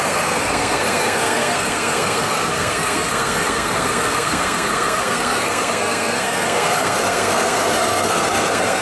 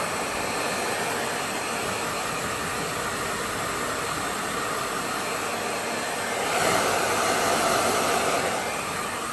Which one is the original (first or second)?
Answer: second